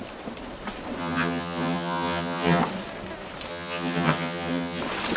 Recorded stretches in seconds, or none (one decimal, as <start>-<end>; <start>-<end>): 0.0-1.0; 2.6-3.5; 4.8-5.2